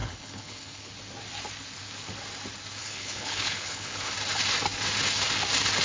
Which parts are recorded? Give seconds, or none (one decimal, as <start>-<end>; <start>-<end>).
0.9-2.8; 4.1-5.8